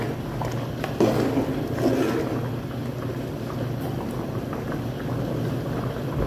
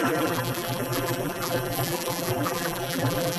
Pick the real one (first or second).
first